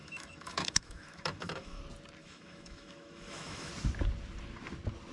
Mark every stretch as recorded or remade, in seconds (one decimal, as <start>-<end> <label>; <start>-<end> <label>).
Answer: 0.0-1.8 remade; 1.8-2.2 recorded; 2.2-3.7 remade; 3.7-5.1 recorded